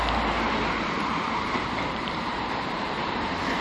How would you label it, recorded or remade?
remade